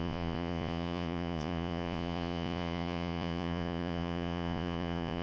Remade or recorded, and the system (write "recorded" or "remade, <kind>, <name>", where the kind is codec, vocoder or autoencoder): remade, vocoder, Vocos